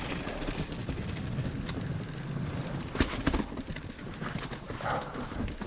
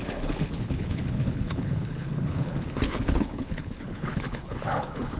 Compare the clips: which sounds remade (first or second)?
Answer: second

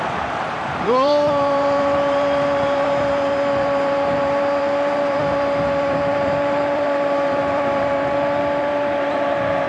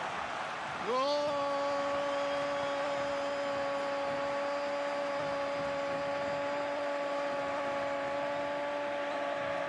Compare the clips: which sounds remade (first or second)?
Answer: first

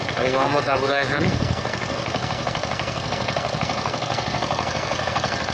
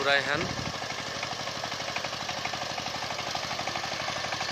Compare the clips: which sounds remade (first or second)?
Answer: first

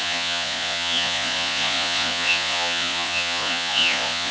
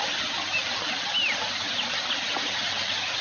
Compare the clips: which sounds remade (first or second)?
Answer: first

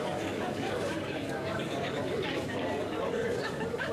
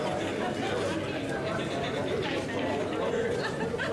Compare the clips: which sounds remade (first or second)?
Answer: first